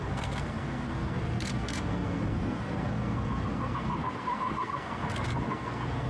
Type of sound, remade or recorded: remade